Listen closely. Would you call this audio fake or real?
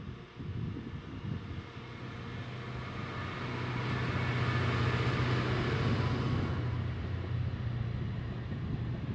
real